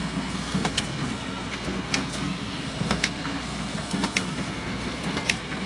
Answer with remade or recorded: remade